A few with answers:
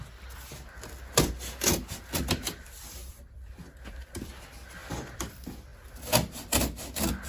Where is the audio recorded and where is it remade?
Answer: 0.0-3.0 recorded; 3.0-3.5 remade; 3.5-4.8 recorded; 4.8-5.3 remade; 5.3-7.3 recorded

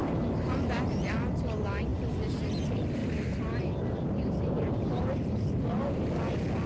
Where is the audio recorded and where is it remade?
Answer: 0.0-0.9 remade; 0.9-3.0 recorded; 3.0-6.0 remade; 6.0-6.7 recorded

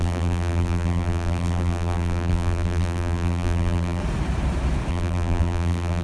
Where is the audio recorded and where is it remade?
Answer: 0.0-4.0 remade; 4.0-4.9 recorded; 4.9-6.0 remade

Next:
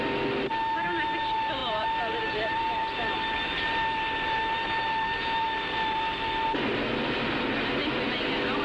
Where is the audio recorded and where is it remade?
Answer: 0.0-8.6 recorded

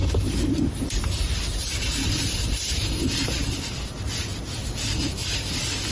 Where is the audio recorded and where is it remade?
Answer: 0.0-3.5 remade; 3.5-5.9 recorded

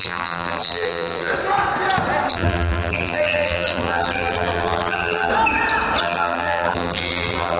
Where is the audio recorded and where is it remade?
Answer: 0.0-1.3 remade; 1.3-2.3 recorded; 2.3-5.3 remade; 5.3-6.0 recorded; 6.0-7.6 remade

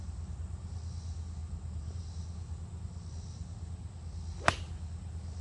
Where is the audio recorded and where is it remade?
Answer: 0.0-1.4 recorded; 1.4-2.1 remade; 2.1-5.4 recorded

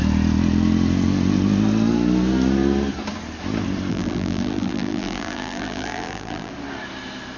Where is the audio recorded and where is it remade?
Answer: 0.0-3.9 recorded; 3.9-6.5 remade; 6.5-7.4 recorded